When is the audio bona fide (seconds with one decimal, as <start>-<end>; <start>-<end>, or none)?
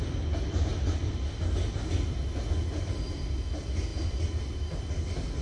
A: 0.0-5.4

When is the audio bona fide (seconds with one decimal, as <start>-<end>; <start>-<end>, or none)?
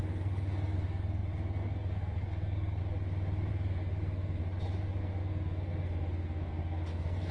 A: 2.8-3.5; 4.4-5.0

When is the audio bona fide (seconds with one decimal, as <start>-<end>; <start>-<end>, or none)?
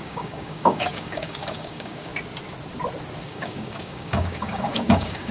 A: 2.1-3.2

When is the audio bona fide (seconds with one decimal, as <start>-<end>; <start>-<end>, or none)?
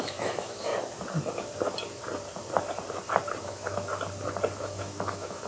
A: 0.7-3.4; 3.9-4.6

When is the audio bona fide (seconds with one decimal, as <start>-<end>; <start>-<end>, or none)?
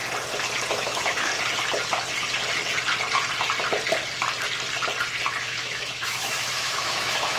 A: 0.0-0.7; 1.3-5.4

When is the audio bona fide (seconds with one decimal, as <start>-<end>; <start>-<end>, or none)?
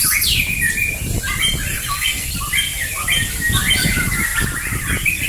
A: 0.0-1.7; 2.3-5.3